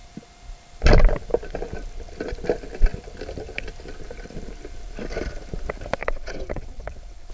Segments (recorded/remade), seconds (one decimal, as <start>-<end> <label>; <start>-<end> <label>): 0.0-6.0 recorded; 6.0-7.3 remade